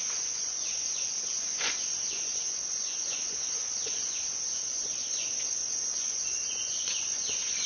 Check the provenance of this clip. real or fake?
fake